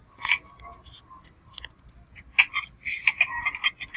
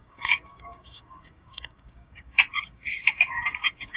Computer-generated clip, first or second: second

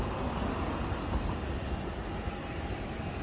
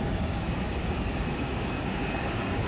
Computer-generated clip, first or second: second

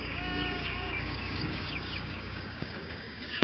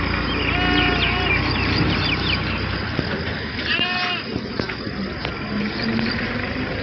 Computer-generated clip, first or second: first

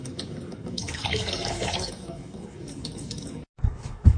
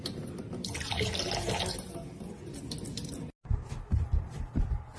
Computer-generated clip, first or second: first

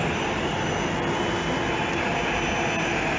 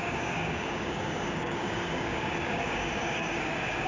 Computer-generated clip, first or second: second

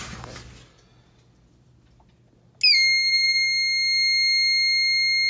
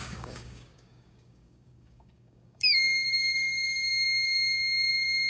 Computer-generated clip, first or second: second